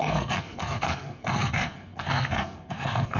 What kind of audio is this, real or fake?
fake